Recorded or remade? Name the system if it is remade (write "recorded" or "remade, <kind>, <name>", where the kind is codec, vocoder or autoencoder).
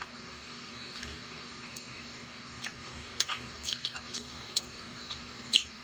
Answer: remade, codec, DAC